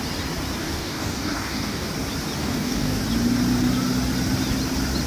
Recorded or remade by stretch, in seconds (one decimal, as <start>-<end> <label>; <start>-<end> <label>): 0.0-0.6 recorded; 0.6-1.9 remade; 1.9-2.4 recorded; 2.4-3.0 remade; 3.0-5.1 recorded